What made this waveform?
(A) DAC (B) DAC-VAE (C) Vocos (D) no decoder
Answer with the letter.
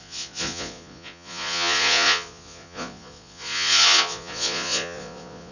C